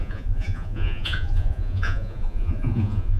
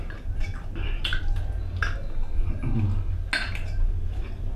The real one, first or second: second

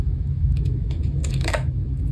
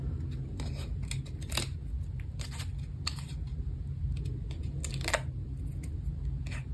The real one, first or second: second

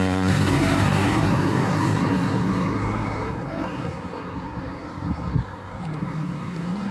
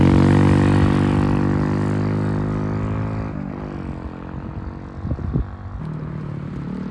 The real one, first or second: second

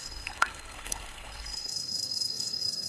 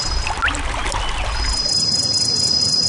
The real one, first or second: second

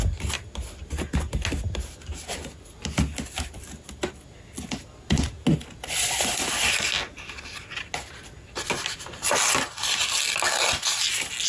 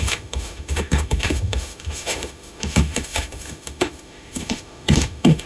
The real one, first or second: first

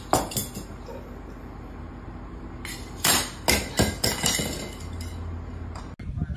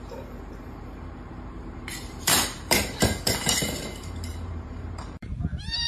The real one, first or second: first